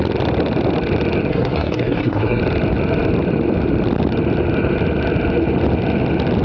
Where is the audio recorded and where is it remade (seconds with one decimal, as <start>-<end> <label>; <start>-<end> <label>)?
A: 0.0-1.3 recorded; 1.3-2.4 remade; 2.4-6.4 recorded